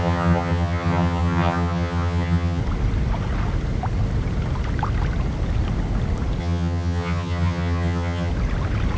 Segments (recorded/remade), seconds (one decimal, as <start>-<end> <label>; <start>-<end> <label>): 0.0-2.6 remade; 2.6-6.4 recorded; 6.4-8.3 remade; 8.3-9.0 recorded

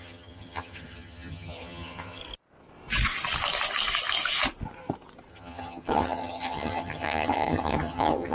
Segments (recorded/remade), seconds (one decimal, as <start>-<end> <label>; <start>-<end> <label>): 0.0-2.2 remade; 2.2-5.3 recorded; 5.3-8.3 remade

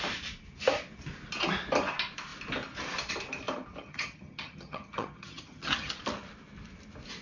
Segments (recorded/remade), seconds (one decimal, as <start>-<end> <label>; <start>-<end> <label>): 0.0-3.8 recorded; 3.8-6.0 remade; 6.0-7.2 recorded

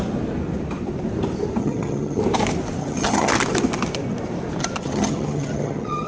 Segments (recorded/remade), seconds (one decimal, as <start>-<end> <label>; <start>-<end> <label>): 0.0-1.6 recorded; 1.6-2.2 remade; 2.2-2.8 recorded; 2.8-3.3 remade; 3.3-4.8 recorded; 4.8-6.1 remade

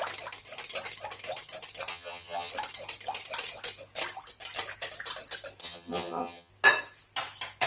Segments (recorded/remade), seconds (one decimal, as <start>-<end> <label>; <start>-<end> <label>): 0.0-1.9 recorded; 1.9-2.5 remade; 2.5-5.6 recorded; 5.6-6.5 remade; 6.5-7.7 recorded

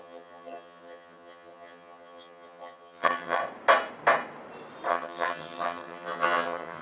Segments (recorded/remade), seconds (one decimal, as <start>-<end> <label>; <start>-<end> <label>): 0.0-3.4 remade; 3.4-4.9 recorded; 4.9-6.8 remade

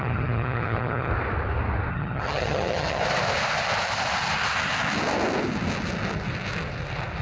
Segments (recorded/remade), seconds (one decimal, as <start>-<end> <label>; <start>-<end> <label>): 0.0-1.1 remade; 1.1-1.9 recorded; 1.9-3.0 remade; 3.0-7.2 recorded

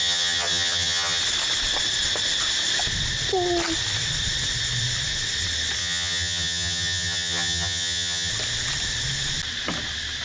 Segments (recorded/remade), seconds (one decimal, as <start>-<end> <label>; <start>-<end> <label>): 0.0-1.2 remade; 1.2-5.8 recorded; 5.8-8.3 remade; 8.3-10.2 recorded